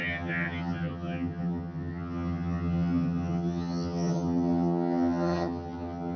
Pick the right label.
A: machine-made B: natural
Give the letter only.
A